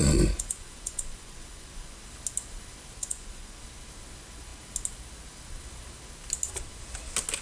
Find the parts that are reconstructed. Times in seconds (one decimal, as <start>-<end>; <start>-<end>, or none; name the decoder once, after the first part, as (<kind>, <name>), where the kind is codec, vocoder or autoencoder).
0.0-2.0 (vocoder, Vocos); 3.0-3.6